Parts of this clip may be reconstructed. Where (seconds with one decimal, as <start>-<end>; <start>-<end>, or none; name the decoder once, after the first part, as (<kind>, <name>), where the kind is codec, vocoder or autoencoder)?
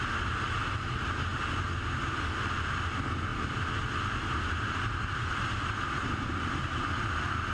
none